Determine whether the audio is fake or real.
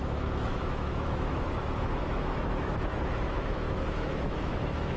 fake